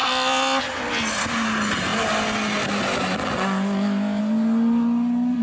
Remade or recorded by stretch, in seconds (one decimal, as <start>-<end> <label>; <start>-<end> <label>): 0.0-5.4 recorded